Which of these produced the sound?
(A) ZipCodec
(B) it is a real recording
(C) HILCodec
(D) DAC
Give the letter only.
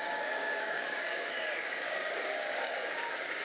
D